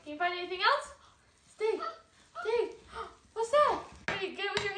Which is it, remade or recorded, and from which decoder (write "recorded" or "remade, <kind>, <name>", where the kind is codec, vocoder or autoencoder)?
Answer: recorded